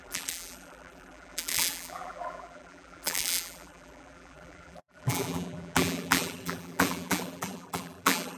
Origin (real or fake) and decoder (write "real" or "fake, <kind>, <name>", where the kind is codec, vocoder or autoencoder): fake, vocoder, BigVGAN v2